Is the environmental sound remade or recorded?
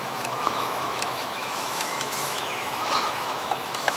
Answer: remade